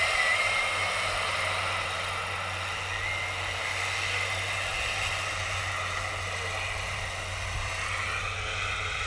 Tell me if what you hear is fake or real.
real